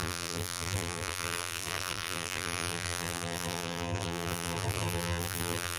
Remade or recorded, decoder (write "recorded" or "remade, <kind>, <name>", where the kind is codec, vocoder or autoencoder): remade, vocoder, BigVGAN v2